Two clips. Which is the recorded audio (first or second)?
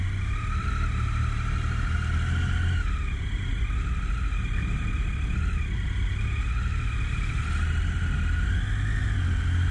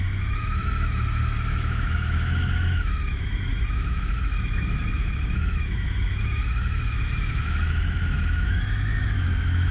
first